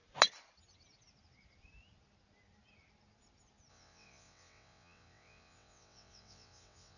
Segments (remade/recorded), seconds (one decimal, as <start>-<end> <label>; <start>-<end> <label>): 0.0-3.7 recorded; 3.7-7.0 remade